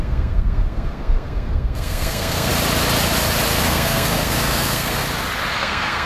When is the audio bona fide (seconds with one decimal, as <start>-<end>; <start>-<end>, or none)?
2.5-3.6; 5.0-5.5